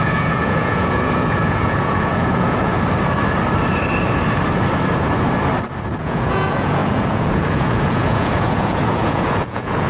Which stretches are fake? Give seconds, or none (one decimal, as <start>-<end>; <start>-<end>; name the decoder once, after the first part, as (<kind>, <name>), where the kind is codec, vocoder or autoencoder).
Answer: 0.0-2.7 (vocoder, Vocos); 6.0-9.9